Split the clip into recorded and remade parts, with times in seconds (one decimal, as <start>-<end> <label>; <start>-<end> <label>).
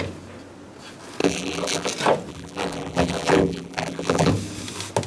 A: 0.0-1.2 recorded; 1.2-1.9 remade; 1.9-2.3 recorded; 2.3-4.3 remade; 4.3-5.1 recorded